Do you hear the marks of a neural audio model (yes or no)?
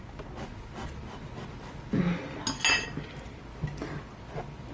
no